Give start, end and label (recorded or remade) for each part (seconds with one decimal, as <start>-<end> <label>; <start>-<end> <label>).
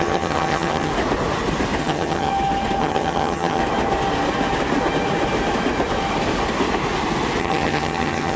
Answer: 0.0-0.9 remade; 0.9-1.8 recorded; 1.8-2.3 remade; 2.3-2.8 recorded; 2.8-3.6 remade; 3.6-7.4 recorded; 7.4-8.4 remade